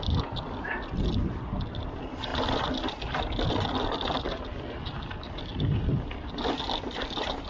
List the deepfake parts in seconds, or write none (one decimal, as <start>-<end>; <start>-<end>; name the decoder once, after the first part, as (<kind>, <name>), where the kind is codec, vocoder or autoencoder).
none